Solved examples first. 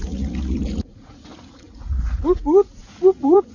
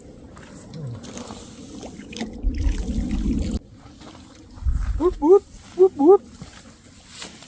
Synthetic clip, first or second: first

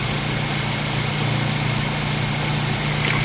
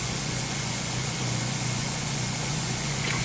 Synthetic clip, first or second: second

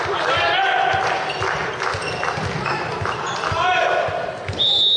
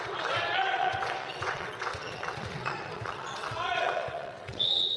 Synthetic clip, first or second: second